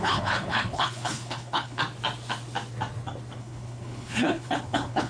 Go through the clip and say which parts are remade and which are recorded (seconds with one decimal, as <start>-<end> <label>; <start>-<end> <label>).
0.0-1.8 remade; 1.8-3.4 recorded; 3.4-5.1 remade